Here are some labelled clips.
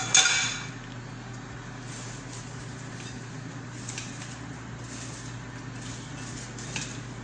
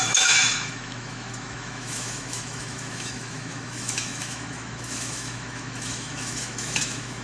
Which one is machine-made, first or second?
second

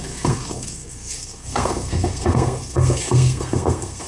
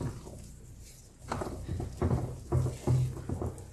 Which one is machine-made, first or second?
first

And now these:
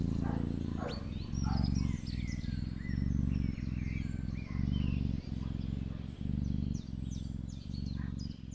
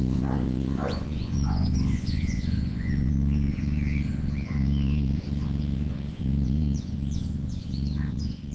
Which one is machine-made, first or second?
second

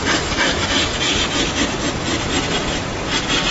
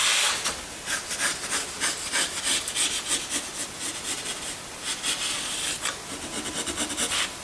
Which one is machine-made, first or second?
first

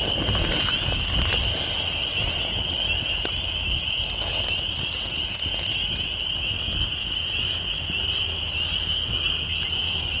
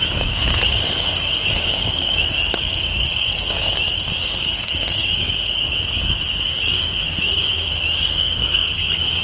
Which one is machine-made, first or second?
second